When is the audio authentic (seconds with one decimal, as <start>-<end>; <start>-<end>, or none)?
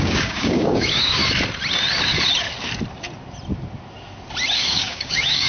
1.2-4.5